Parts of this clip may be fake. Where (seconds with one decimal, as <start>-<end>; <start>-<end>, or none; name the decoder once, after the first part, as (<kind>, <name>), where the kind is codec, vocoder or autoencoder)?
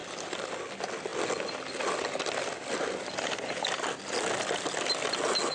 none